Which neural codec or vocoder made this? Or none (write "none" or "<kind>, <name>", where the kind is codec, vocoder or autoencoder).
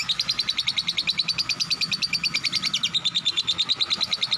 none